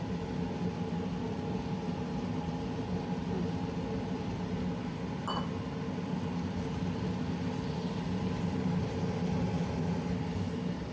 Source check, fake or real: real